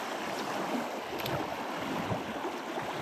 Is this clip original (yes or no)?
yes